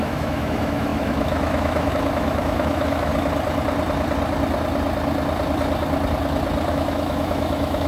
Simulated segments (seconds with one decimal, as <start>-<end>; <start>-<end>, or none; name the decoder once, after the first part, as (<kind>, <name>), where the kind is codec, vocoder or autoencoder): 0.0-3.1 (autoencoder, DAC-VAE); 6.7-7.9